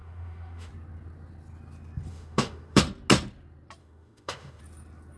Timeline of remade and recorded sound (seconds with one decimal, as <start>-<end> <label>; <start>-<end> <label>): 0.0-0.7 remade; 0.7-2.1 recorded; 2.1-2.8 remade; 2.8-3.8 recorded; 3.8-4.6 remade; 4.6-5.2 recorded